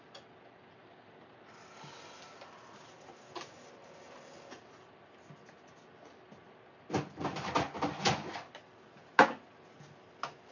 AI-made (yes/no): no